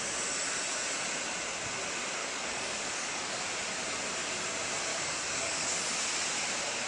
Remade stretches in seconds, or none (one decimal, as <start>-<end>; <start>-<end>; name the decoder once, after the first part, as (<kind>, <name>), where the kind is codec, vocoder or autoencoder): 2.2-3.4 (codec, DAC); 4.9-6.0